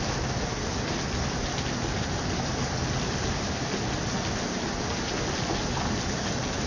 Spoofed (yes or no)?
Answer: no